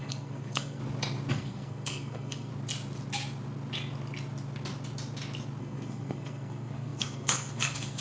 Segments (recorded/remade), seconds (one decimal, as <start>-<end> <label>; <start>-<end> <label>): 0.0-0.8 remade; 0.8-1.3 recorded; 1.3-2.5 remade; 2.5-5.6 recorded; 5.6-8.0 remade